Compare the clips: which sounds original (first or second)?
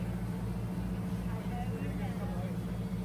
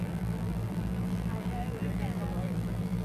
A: first